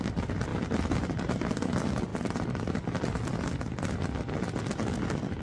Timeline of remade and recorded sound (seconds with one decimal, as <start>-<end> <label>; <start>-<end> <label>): 0.0-0.5 recorded; 0.5-1.2 remade; 1.2-5.4 recorded